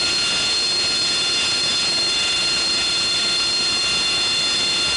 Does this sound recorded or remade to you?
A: recorded